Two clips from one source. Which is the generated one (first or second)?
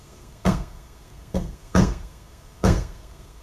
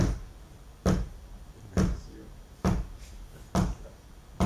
first